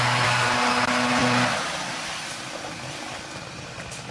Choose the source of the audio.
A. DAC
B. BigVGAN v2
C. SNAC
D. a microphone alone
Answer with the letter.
D